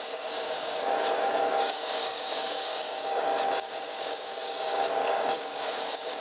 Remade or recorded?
remade